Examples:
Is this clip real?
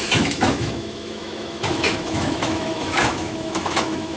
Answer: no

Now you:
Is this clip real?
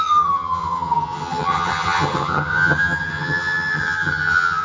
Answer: no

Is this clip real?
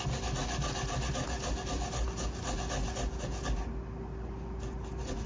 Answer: yes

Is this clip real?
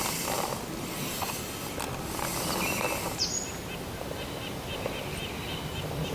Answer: yes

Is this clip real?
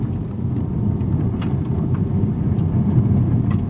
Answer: yes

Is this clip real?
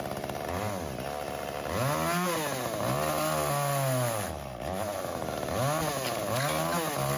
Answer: yes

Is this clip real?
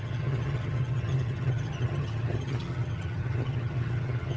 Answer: no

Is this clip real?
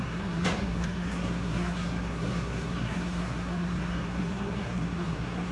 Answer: no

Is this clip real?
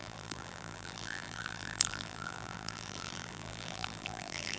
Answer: no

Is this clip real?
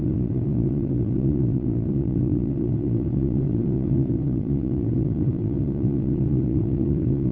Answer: no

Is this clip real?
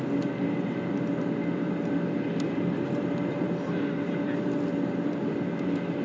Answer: yes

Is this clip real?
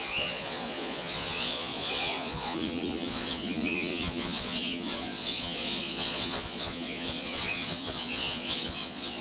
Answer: no